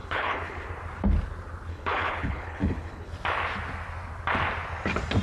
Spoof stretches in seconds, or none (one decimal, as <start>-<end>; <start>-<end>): 0.0-0.7; 1.7-3.1

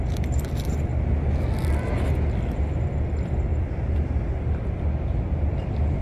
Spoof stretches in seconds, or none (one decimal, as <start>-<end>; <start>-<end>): 3.5-6.0

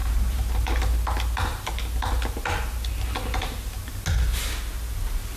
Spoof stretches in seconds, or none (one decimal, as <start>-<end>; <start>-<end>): 0.0-0.7

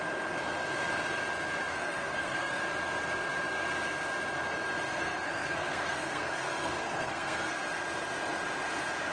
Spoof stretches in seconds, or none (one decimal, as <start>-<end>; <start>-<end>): 1.7-2.6; 4.9-7.6

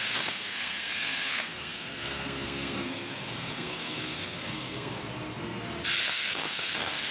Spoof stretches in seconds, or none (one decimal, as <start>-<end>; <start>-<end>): 0.0-5.0; 6.0-7.1

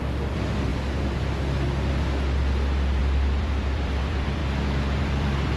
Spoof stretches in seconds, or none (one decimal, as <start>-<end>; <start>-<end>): 0.0-0.7; 3.0-4.4; 5.0-5.6

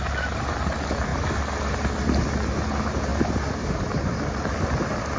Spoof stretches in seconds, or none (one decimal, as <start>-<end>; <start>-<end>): none

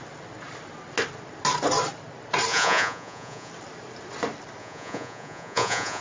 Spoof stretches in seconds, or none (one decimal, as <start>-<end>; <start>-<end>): 2.5-3.5; 4.6-6.0